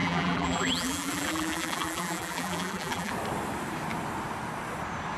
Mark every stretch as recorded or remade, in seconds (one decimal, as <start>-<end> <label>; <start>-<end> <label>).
0.0-3.1 remade; 3.1-5.2 recorded